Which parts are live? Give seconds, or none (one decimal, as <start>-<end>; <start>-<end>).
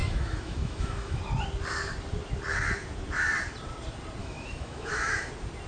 1.2-4.2; 5.3-5.7